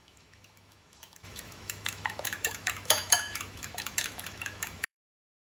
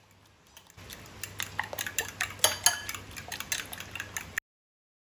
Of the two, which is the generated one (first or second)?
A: first